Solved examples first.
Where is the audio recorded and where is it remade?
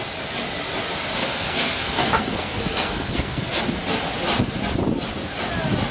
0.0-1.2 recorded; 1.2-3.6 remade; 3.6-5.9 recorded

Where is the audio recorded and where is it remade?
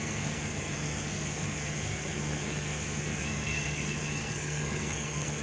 0.0-5.4 remade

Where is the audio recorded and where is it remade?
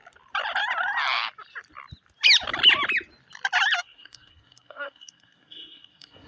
0.0-3.8 recorded; 3.8-6.3 remade